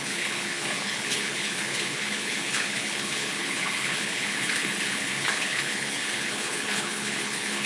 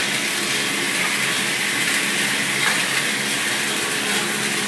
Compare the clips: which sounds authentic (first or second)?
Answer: second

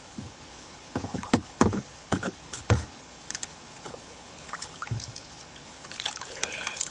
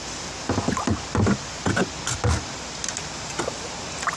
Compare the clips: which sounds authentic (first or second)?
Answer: second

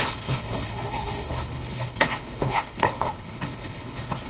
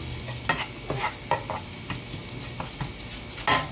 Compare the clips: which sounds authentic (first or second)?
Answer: second